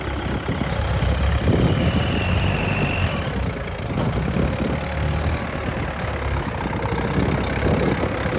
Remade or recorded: recorded